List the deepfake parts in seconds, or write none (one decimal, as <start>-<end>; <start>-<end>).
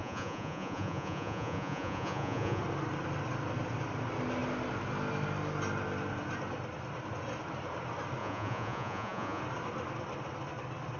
0.0-2.6; 8.2-9.4